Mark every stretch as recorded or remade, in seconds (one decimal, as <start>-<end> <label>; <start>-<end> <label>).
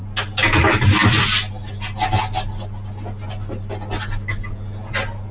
0.0-5.3 recorded